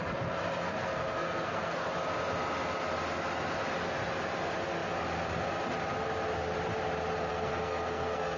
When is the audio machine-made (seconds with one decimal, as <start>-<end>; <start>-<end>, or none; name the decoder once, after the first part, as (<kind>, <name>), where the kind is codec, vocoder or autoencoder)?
0.6-1.9 (codec, SNAC); 7.3-8.4